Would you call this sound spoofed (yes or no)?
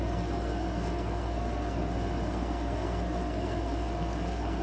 yes